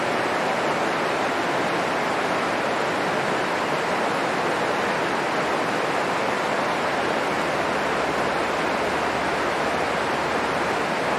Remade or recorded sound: recorded